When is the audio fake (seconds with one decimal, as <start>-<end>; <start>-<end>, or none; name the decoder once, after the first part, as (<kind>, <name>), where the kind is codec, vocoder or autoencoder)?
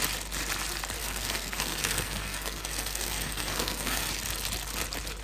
1.0-4.1 (codec, SNAC)